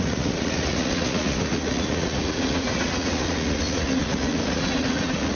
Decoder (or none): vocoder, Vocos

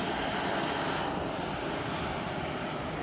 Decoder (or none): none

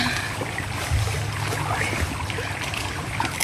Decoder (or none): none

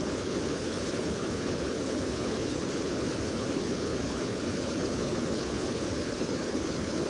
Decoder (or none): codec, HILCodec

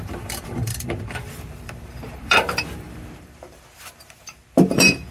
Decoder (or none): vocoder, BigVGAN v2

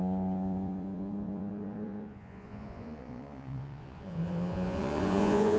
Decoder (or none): vocoder, Vocos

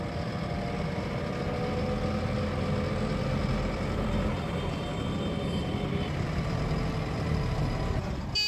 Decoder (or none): none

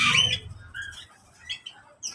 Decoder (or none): none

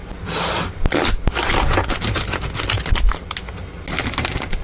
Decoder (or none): none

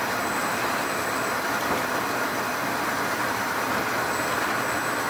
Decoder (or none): none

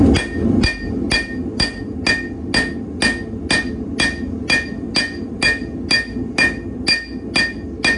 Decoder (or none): none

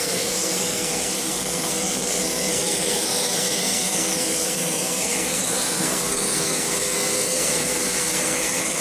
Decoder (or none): codec, SNAC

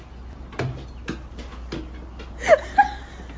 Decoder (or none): none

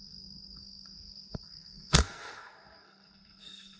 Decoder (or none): codec, SNAC